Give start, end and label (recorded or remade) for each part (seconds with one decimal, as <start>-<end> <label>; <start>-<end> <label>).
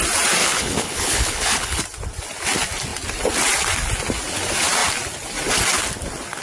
0.0-0.4 recorded; 0.4-1.8 remade; 1.8-6.4 recorded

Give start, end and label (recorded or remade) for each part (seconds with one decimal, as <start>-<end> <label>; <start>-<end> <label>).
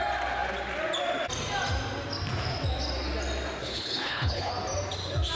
0.0-3.6 recorded; 3.6-4.5 remade; 4.5-5.4 recorded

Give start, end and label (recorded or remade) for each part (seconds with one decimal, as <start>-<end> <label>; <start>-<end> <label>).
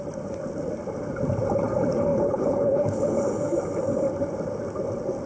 0.0-2.1 recorded; 2.1-3.3 remade; 3.3-5.3 recorded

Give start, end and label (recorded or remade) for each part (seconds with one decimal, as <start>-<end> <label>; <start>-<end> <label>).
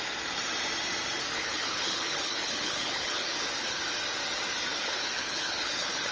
0.0-1.3 recorded; 1.3-3.8 remade; 3.8-4.7 recorded; 4.7-6.1 remade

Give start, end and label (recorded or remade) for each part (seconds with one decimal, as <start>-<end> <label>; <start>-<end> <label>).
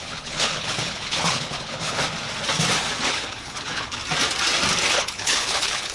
0.0-2.0 remade; 2.0-3.1 recorded; 3.1-4.0 remade; 4.0-4.9 recorded; 4.9-5.9 remade